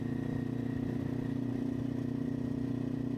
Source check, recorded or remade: recorded